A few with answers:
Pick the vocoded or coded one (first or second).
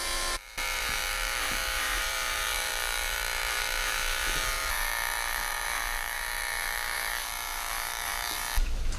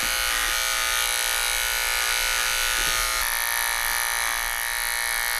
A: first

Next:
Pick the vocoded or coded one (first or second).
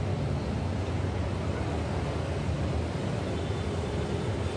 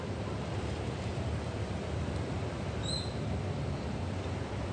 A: second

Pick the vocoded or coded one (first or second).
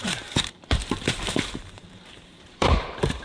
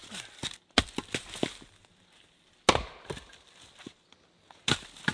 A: first